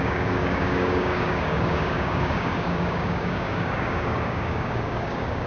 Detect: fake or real fake